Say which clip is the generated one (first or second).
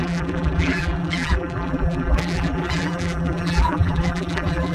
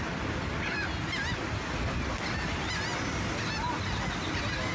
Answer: first